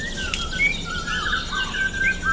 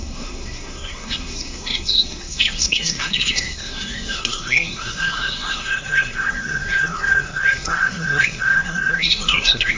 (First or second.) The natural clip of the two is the first